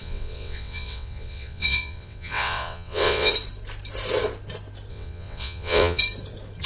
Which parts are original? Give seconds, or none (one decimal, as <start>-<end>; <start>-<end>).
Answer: 3.3-4.9; 6.0-6.7